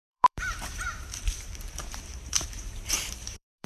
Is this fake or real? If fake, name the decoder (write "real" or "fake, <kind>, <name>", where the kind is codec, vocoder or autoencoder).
fake, vocoder, BigVGAN v2